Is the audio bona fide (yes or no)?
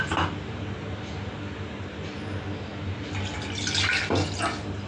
yes